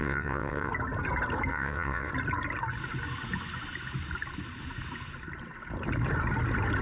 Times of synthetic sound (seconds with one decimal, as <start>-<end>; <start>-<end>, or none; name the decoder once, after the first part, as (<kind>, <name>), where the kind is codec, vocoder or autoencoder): 0.0-0.7 (vocoder, WaveNeXt); 1.5-2.1